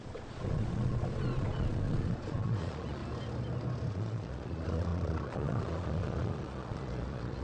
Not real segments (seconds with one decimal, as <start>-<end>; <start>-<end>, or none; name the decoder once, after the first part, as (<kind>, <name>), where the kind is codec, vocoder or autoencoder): 0.0-3.0 (vocoder, Vocos); 3.9-7.4